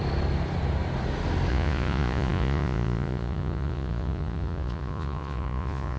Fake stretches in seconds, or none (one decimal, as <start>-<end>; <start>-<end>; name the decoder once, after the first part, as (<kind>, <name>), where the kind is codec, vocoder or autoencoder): 1.5-6.0 (vocoder, Vocos)